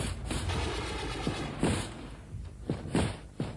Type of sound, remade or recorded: recorded